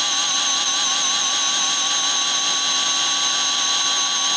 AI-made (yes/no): yes